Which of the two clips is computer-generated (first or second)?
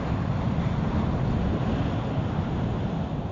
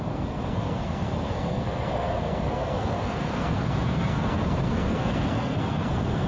second